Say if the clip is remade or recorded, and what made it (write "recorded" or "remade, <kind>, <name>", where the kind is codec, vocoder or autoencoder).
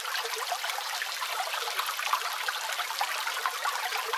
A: recorded